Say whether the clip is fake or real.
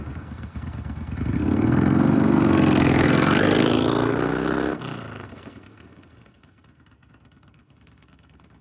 fake